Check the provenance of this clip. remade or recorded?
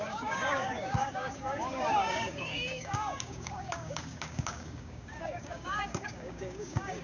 remade